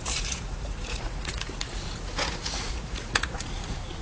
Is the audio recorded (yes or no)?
no